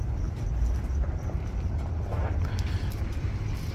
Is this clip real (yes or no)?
yes